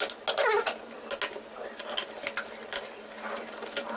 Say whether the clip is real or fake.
real